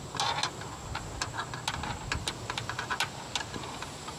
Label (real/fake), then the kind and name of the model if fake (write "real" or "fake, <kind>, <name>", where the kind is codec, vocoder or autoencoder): real